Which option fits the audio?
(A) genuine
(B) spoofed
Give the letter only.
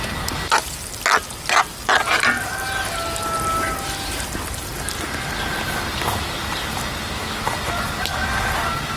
A